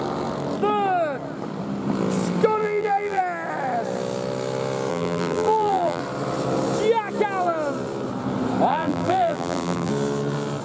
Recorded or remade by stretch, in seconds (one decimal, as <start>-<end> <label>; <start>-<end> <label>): 0.0-2.6 recorded; 2.6-3.2 remade; 3.2-4.9 recorded; 4.9-6.0 remade; 6.0-8.7 recorded; 8.7-9.9 remade; 9.9-10.6 recorded